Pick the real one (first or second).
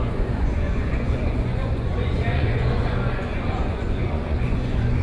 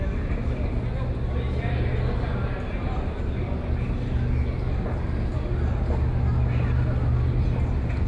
second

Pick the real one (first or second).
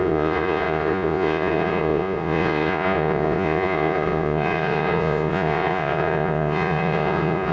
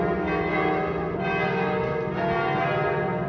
second